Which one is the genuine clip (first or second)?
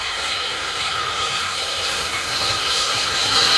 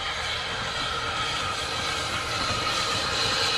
second